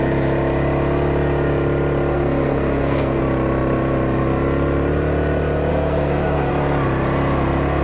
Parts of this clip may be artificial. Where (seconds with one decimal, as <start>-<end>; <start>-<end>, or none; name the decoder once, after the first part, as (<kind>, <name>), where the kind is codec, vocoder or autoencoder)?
2.1-3.2 (codec, SNAC); 5.7-6.5

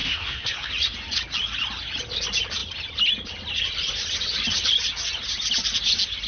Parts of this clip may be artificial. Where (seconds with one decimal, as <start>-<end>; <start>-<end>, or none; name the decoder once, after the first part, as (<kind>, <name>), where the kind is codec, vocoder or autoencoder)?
0.0-0.7 (codec, SNAC)

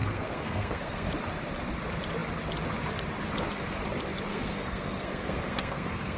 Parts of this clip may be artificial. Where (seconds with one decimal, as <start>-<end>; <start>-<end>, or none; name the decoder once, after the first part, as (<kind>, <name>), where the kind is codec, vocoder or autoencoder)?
0.0-1.1 (codec, SNAC); 4.3-6.2

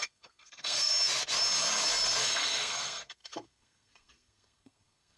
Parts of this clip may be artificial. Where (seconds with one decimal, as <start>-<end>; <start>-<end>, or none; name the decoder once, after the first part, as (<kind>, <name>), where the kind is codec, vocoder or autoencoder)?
0.0-0.9 (codec, SNAC); 2.2-5.2

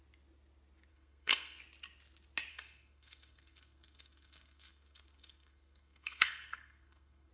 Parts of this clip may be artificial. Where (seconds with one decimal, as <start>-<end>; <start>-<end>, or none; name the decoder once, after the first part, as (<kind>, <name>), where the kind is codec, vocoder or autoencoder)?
0.9-1.6 (codec, SNAC); 2.5-7.3